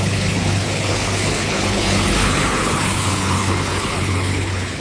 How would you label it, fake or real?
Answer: fake